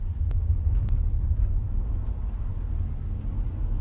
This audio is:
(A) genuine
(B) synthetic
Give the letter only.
A